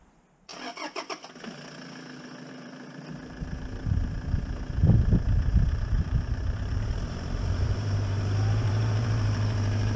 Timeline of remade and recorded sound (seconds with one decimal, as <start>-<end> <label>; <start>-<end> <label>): 0.0-0.5 remade; 0.5-2.5 recorded; 2.5-4.8 remade; 4.8-5.7 recorded; 5.7-10.0 remade